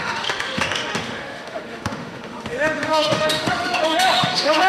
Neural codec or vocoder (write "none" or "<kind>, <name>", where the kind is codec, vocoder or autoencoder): autoencoder, DAC-VAE